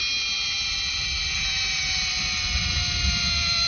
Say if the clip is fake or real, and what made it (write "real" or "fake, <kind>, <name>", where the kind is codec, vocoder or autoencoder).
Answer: real